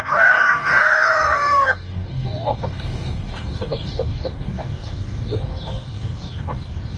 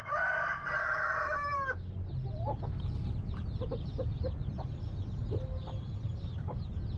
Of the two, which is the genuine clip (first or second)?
second